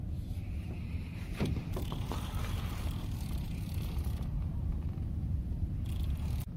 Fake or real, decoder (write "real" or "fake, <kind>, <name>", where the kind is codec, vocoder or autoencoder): fake, vocoder, BigVGAN v2